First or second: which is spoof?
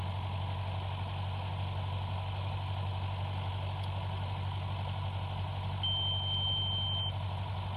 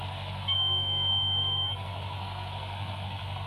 second